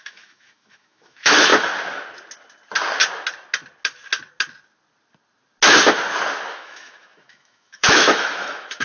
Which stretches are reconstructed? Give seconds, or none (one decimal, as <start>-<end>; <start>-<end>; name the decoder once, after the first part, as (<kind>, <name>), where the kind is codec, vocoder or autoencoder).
0.0-1.5 (autoencoder, DAC-VAE); 6.5-8.8